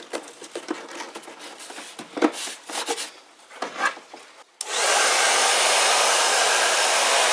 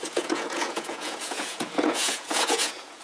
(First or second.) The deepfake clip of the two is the second